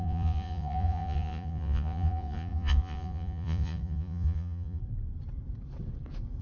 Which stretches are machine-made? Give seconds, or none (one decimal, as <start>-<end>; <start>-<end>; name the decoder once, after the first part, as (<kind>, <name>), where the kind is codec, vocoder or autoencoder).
0.0-4.8 (vocoder, Vocos)